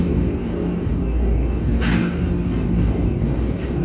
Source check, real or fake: fake